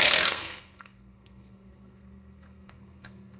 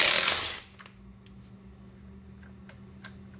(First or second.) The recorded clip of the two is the second